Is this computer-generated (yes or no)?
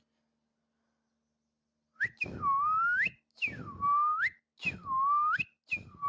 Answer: no